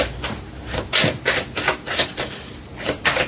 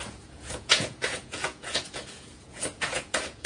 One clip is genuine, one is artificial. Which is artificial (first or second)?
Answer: second